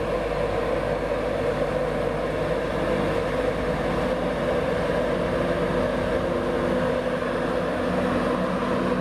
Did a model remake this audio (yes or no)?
no